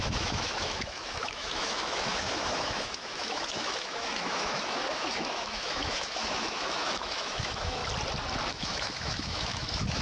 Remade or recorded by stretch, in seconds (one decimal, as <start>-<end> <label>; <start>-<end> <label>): 0.0-7.8 remade; 7.8-8.5 recorded; 8.5-10.0 remade